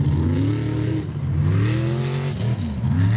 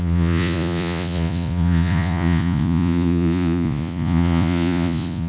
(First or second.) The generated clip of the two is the second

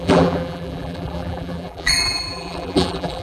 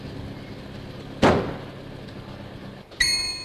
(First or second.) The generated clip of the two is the first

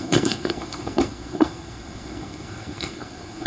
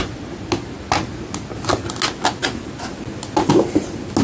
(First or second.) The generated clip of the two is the first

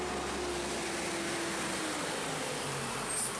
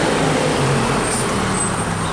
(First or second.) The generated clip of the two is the second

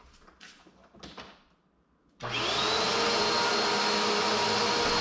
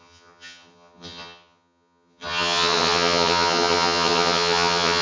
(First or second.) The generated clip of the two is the second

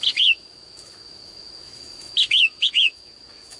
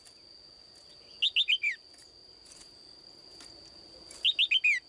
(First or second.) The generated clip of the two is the first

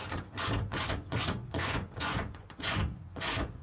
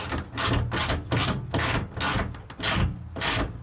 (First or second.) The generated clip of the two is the first